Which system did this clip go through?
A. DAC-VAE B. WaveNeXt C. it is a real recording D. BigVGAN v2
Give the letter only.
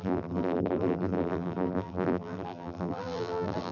D